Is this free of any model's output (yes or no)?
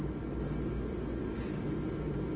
yes